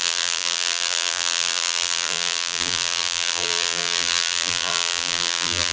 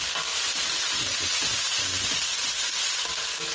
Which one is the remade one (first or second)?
first